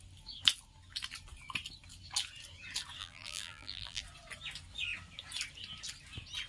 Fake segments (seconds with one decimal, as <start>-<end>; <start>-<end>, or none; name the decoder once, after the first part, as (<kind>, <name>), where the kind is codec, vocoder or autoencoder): 3.0-4.0 (vocoder, BigVGAN v2)